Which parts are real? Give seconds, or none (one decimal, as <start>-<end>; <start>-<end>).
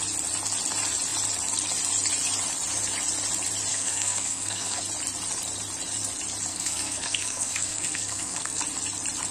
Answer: 0.0-3.7; 4.8-6.5; 8.6-9.3